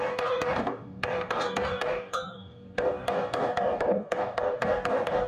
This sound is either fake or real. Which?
fake